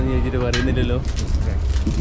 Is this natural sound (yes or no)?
yes